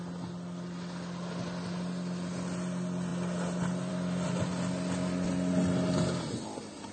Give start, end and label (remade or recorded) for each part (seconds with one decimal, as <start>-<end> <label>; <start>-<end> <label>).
0.0-6.9 recorded